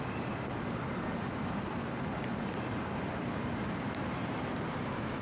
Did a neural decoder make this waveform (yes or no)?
no